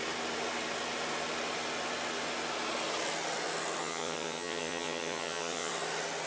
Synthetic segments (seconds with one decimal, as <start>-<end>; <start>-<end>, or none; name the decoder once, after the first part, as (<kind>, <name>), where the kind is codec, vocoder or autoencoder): 3.8-5.7 (vocoder, HiFi-GAN)